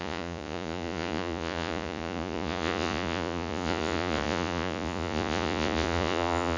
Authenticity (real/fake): fake